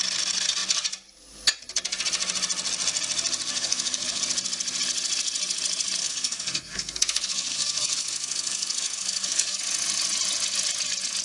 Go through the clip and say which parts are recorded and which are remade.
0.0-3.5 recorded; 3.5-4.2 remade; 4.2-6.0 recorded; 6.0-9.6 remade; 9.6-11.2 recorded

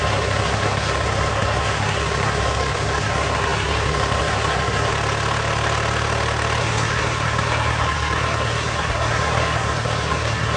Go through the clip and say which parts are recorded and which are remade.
0.0-4.9 remade; 4.9-6.6 recorded; 6.6-10.6 remade

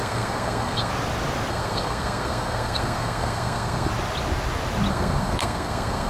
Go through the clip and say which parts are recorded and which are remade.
0.0-0.9 remade; 0.9-1.5 recorded; 1.5-3.9 remade; 3.9-4.9 recorded; 4.9-6.1 remade

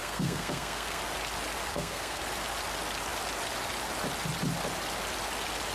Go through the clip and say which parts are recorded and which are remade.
0.0-1.0 remade; 1.0-1.7 recorded; 1.7-2.2 remade; 2.2-5.7 recorded

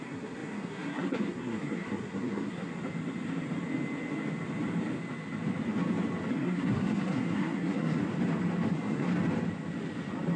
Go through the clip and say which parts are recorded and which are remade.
0.0-2.7 remade; 2.7-6.3 recorded; 6.3-8.0 remade; 8.0-8.7 recorded; 8.7-9.1 remade; 9.1-10.4 recorded

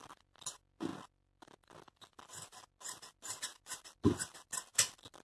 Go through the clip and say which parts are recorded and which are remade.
0.0-5.2 recorded

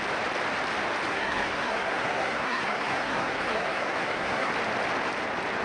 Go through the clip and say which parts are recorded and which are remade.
0.0-1.1 recorded; 1.1-4.5 remade; 4.5-5.6 recorded

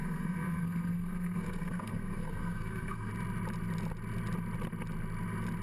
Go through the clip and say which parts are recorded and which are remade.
0.0-3.1 remade; 3.1-5.6 recorded